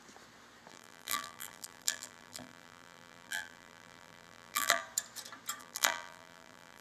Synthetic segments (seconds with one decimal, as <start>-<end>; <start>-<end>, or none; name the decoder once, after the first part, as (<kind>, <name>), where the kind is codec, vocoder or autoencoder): 0.7-4.8 (vocoder, BigVGAN v2); 5.6-6.8